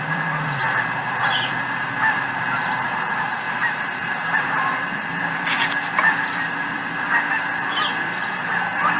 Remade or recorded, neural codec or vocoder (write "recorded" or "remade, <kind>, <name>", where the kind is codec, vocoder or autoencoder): remade, vocoder, BigVGAN v2